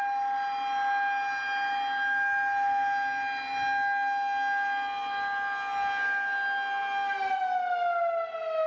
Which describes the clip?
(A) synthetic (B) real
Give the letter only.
B